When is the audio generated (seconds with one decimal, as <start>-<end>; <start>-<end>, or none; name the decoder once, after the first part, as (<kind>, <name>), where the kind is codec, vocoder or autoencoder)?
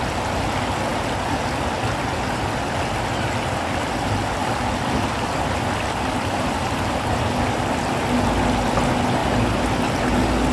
4.4-8.0 (vocoder, BigVGAN v2)